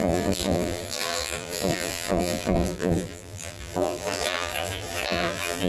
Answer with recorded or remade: remade